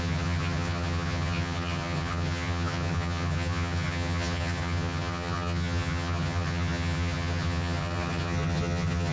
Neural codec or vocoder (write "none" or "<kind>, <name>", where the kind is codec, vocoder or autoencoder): vocoder, HiFi-GAN